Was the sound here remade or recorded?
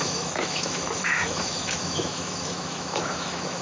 remade